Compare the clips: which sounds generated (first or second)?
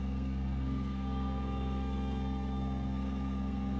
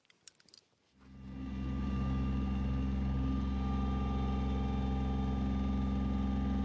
first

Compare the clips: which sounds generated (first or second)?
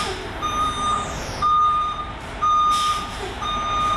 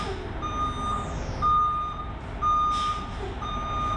first